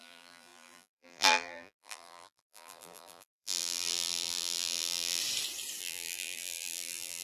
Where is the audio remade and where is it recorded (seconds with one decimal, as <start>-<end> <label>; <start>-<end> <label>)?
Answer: 0.0-5.2 remade; 5.2-5.8 recorded; 5.8-7.2 remade